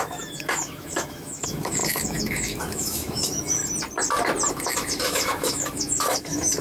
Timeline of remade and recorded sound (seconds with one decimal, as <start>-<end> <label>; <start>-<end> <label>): 0.0-3.6 remade; 3.6-4.5 recorded; 4.5-6.6 remade